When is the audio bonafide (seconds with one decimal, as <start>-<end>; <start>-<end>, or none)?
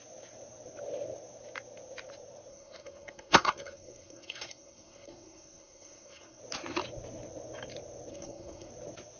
0.0-2.5; 6.4-8.1; 8.7-9.2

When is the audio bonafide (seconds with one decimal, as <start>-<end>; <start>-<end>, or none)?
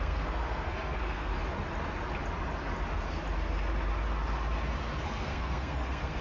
1.3-5.0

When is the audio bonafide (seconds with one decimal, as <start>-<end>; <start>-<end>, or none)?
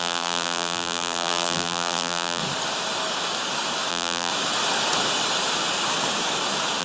2.4-3.9; 4.3-6.8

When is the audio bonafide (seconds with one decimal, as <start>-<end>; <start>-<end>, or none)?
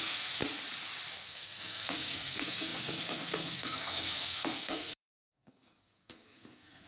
0.4-1.1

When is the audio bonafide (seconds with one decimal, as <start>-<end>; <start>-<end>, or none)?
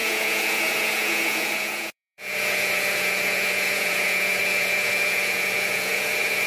none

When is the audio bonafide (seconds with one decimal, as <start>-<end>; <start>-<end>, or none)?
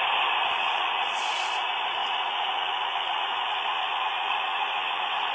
0.0-0.6; 1.2-2.0